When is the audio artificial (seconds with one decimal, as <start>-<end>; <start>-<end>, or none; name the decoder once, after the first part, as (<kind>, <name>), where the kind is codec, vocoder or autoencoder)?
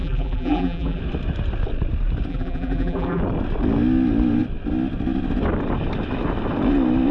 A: 0.0-1.0 (vocoder, BigVGAN v2); 2.3-3.2